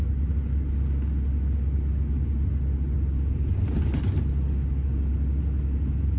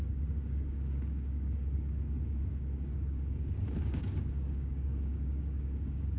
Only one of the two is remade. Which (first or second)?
second